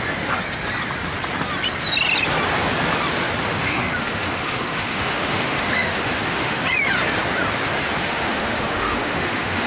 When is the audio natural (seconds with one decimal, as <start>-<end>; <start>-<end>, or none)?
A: 0.0-3.5; 6.6-8.0

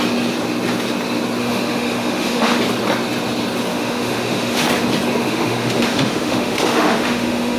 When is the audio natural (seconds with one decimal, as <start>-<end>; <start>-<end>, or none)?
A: 0.0-1.4; 2.6-3.7; 4.7-5.2

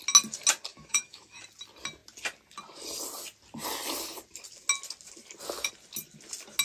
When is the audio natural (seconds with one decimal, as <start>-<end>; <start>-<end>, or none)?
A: 0.0-0.7; 1.4-6.6

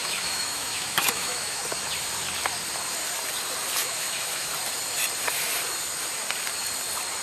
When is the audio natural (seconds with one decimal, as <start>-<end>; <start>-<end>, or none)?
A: 1.6-3.8; 4.5-7.2

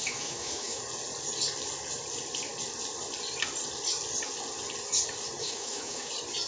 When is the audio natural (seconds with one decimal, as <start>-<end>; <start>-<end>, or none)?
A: 0.8-5.4; 6.1-6.5

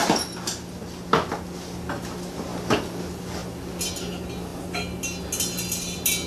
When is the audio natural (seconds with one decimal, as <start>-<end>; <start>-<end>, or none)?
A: 0.0-6.3

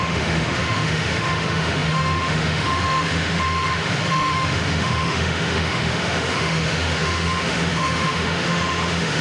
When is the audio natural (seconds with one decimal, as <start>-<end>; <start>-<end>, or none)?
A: none

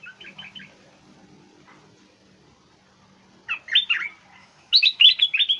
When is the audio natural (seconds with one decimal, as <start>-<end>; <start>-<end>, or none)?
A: 0.0-4.4; 5.1-5.6